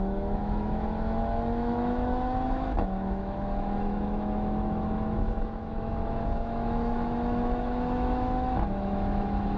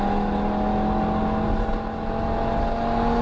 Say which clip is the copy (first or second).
first